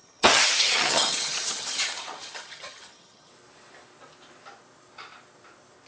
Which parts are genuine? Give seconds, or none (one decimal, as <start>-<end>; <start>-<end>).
3.3-5.9